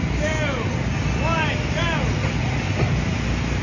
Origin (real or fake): real